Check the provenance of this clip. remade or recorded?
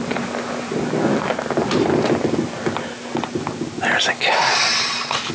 recorded